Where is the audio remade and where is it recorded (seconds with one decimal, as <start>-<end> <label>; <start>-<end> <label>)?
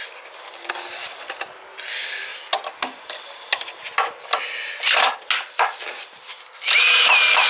0.0-7.5 recorded